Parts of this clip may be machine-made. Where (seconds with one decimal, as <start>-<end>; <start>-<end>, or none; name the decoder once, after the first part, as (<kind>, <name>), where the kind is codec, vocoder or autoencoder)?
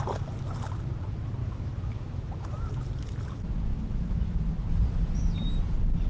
1.4-2.7 (autoencoder, DAC-VAE); 3.7-4.4